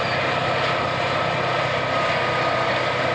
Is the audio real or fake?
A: real